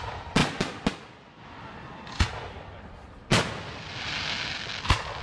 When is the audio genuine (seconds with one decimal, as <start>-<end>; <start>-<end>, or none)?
0.0-5.2